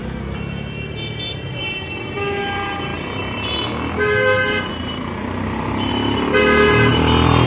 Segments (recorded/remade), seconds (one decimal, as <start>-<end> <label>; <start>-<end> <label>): 0.0-7.5 recorded